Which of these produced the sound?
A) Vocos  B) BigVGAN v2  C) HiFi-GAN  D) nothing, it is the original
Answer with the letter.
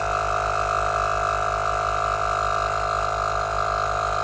D